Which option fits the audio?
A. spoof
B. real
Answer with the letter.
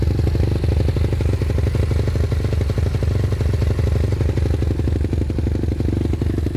B